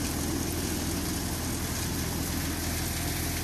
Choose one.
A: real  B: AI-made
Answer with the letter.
A